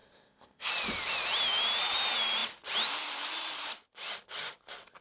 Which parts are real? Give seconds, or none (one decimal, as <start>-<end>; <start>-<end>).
0.7-5.0